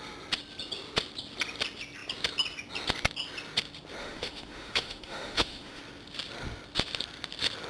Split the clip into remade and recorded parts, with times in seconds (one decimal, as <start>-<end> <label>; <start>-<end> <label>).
0.0-4.0 recorded; 4.0-5.8 remade; 5.8-7.7 recorded